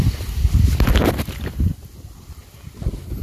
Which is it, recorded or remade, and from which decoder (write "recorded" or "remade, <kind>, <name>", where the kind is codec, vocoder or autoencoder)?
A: recorded